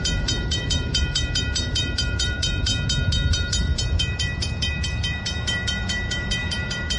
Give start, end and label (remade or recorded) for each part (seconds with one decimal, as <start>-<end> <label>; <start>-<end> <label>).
0.0-2.7 remade; 2.7-3.3 recorded; 3.3-7.0 remade

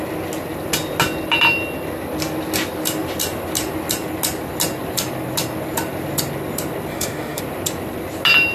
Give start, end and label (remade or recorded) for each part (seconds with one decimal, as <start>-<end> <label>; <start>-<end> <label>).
0.0-6.9 recorded; 6.9-7.4 remade; 7.4-8.5 recorded

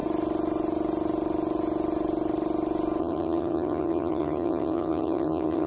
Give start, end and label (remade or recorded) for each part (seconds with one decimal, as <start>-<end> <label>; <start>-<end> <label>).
0.0-3.0 recorded; 3.0-5.7 remade

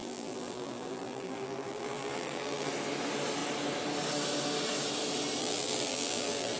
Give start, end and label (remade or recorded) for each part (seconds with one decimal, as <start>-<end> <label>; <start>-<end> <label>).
0.0-2.7 remade; 2.7-5.4 recorded; 5.4-6.6 remade

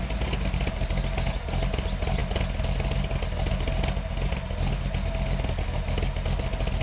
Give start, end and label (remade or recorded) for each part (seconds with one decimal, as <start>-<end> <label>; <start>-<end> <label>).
0.0-6.8 recorded

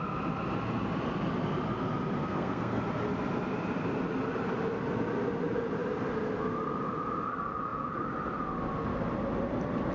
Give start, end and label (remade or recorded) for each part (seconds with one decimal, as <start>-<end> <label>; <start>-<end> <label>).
0.0-2.2 recorded; 2.2-2.8 remade; 2.8-9.9 recorded

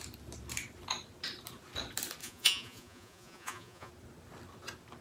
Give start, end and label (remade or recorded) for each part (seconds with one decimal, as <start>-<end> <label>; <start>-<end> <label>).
0.0-2.2 recorded; 2.2-3.9 remade; 3.9-5.0 recorded

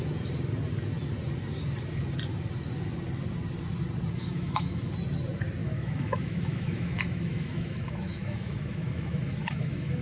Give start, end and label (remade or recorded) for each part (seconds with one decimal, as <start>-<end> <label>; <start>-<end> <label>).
0.0-4.2 recorded; 4.2-4.9 remade; 4.9-5.6 recorded; 5.6-10.0 remade